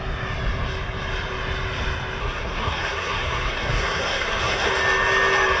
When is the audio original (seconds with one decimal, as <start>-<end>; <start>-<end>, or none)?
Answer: 0.0-2.2; 4.7-5.6